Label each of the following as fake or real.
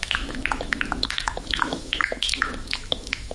fake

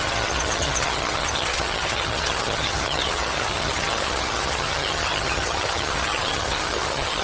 fake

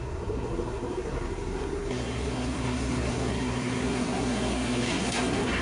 fake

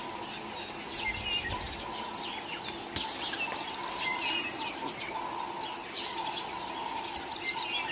real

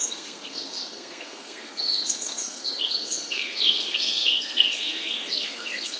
fake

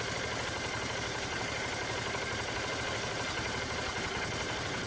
real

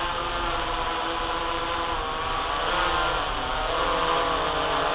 real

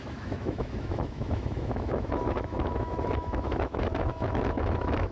fake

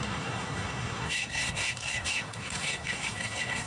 fake